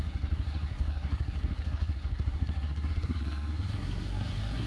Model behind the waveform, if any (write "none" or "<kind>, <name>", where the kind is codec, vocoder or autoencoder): codec, SNAC